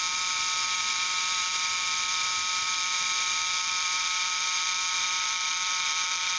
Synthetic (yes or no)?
yes